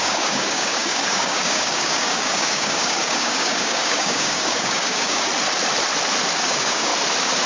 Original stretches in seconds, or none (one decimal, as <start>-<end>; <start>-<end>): 5.3-6.3; 6.9-7.5